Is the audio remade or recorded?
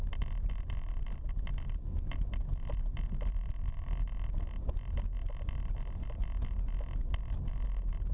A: recorded